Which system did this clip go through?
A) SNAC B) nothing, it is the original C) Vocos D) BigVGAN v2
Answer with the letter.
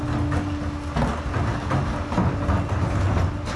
B